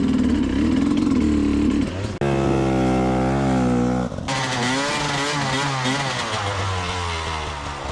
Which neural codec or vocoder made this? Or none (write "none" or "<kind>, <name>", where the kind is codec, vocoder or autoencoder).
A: none